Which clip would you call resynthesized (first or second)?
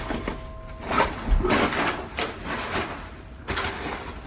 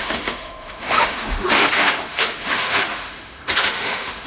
second